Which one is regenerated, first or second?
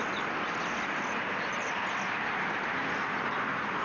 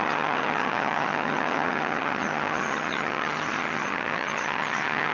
second